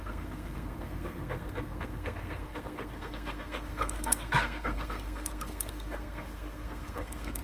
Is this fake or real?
fake